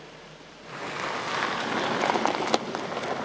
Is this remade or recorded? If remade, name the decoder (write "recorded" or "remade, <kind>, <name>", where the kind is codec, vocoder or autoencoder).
recorded